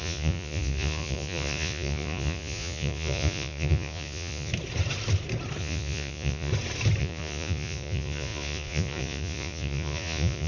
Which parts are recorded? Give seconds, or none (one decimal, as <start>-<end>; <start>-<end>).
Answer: 4.5-5.6; 6.5-7.0